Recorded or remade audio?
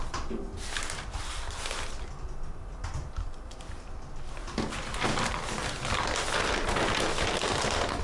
recorded